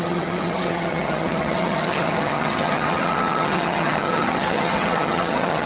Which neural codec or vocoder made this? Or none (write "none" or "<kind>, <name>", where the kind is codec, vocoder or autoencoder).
vocoder, HiFi-GAN